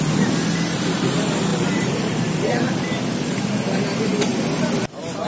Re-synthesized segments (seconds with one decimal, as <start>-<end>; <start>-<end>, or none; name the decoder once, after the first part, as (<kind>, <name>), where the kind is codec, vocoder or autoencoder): 1.5-3.4 (vocoder, BigVGAN v2)